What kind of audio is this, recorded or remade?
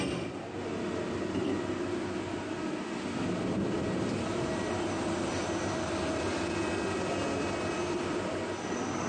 recorded